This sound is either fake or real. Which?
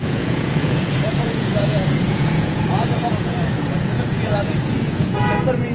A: fake